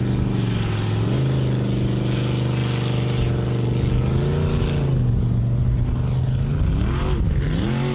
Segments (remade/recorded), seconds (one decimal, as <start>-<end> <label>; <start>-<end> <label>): 0.0-7.9 recorded